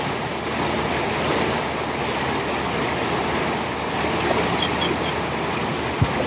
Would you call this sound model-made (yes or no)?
no